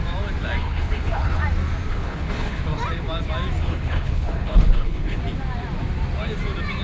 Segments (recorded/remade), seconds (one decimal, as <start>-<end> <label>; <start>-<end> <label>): 0.0-0.6 recorded; 0.6-1.4 remade; 1.4-1.9 recorded; 1.9-2.6 remade; 2.6-3.6 recorded; 3.6-5.2 remade; 5.2-6.8 recorded